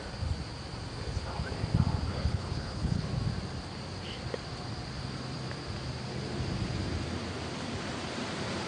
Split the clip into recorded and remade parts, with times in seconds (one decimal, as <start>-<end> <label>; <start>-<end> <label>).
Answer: 0.0-2.1 recorded; 2.1-3.1 remade; 3.1-8.7 recorded